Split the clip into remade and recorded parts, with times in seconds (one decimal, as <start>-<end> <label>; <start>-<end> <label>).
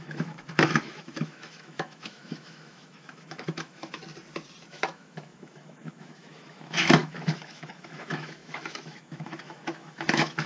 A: 0.0-4.0 remade; 4.0-4.7 recorded; 4.7-10.5 remade